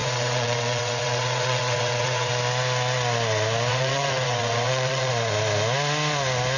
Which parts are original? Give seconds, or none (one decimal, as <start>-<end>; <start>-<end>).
2.3-3.7; 5.1-6.6